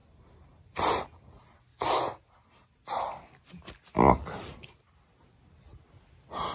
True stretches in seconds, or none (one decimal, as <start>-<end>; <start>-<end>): 0.0-6.5